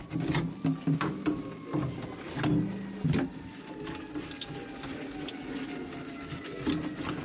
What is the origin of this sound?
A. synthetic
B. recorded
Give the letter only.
B